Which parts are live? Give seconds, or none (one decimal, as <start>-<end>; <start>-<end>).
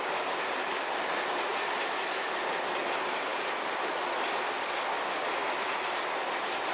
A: 0.0-6.7